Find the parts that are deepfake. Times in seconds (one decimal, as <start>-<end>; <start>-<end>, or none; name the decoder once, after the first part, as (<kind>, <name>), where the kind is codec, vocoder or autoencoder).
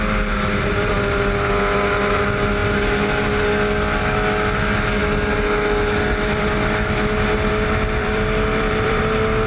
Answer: 8.0-9.0 (vocoder, BigVGAN v2)